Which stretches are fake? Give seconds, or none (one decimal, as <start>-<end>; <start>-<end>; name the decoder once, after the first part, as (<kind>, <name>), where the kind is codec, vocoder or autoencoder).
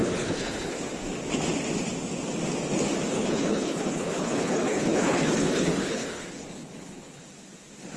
0.0-0.8 (codec, HILCodec); 3.1-7.2